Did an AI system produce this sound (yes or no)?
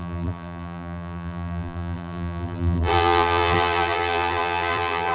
yes